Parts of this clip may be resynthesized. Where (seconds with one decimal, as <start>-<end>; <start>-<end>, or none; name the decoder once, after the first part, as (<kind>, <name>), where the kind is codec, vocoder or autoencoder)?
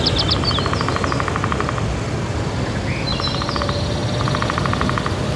3.1-3.6 (vocoder, BigVGAN v2)